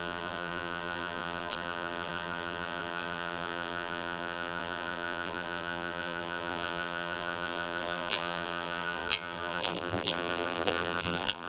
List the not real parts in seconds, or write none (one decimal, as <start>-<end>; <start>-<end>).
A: 0.0-11.5